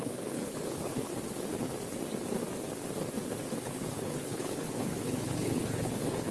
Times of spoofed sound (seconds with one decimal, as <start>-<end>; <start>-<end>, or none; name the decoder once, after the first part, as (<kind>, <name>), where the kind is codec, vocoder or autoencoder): 0.0-1.1 (codec, HILCodec); 3.6-6.3